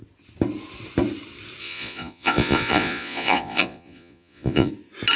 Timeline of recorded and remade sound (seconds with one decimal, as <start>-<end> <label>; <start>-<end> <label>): 0.0-1.6 recorded; 1.6-4.7 remade; 4.7-5.2 recorded